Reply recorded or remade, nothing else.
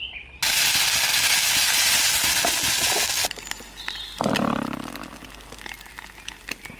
recorded